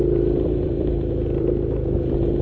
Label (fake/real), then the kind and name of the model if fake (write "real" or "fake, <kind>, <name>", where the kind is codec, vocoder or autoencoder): fake, vocoder, BigVGAN v2